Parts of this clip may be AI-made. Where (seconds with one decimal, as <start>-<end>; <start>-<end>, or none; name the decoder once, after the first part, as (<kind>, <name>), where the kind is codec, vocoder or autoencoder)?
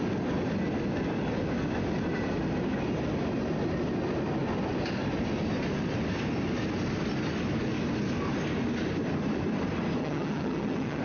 10.0-11.0 (vocoder, HiFi-GAN)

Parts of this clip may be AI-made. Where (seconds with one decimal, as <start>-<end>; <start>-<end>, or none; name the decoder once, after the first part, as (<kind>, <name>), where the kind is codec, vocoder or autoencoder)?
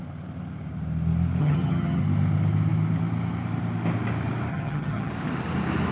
1.4-2.0 (vocoder, HiFi-GAN); 4.5-5.1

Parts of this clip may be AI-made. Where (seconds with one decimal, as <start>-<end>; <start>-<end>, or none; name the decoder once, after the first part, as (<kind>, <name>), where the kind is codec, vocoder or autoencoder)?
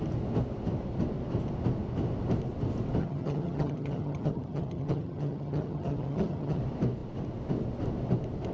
3.0-6.6 (vocoder, HiFi-GAN)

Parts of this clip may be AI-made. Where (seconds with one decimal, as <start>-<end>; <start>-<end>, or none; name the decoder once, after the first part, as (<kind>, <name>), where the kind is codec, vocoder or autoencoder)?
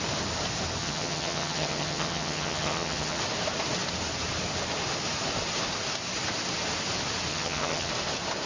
0.8-3.2 (vocoder, HiFi-GAN); 7.3-7.9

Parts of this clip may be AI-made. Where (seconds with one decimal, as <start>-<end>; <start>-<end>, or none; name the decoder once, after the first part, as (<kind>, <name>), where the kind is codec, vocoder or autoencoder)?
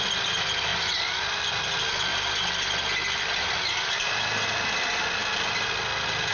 none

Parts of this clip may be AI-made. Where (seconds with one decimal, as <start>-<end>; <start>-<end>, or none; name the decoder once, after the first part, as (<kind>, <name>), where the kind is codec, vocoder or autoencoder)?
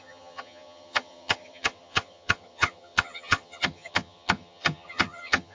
0.0-5.5 (vocoder, HiFi-GAN)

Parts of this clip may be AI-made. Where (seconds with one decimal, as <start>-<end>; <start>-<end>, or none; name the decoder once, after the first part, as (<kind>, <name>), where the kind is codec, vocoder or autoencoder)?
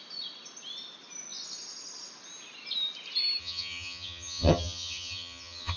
3.4-5.8 (vocoder, HiFi-GAN)